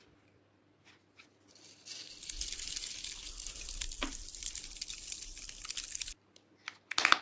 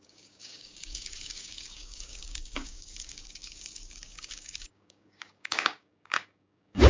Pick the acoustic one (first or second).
first